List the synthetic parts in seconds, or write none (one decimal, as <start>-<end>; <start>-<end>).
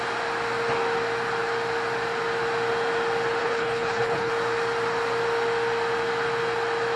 3.4-4.3